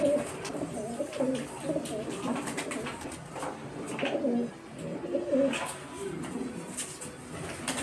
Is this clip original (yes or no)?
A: yes